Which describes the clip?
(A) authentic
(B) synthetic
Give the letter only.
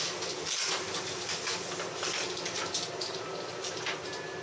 A